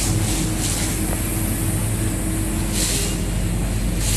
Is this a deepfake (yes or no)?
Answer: no